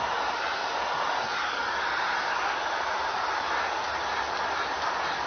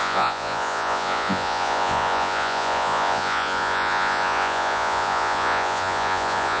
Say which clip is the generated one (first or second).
second